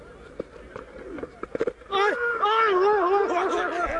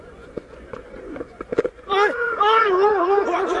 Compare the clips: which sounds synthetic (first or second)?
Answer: second